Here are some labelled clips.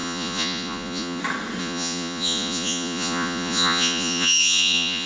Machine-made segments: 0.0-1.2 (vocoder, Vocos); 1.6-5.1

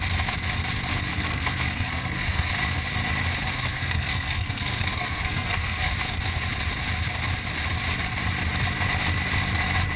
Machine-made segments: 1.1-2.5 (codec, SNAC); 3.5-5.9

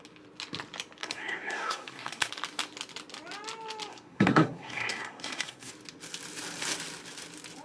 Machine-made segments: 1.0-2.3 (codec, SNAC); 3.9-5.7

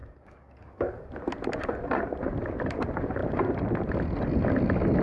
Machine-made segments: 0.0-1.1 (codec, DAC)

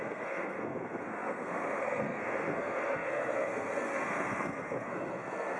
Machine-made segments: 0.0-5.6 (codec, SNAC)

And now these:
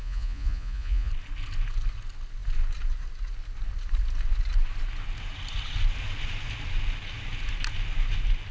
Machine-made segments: 0.0-1.1 (vocoder, Vocos)